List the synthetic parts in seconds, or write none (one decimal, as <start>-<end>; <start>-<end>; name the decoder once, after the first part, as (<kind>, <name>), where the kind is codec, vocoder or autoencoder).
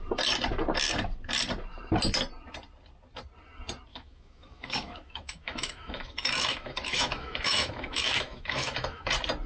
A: 3.9-9.1 (autoencoder, DAC-VAE)